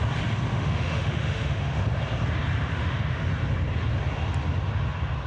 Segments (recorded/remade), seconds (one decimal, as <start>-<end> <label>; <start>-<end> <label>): 0.0-0.5 recorded; 0.5-1.8 remade; 1.8-2.7 recorded; 2.7-3.3 remade; 3.3-5.3 recorded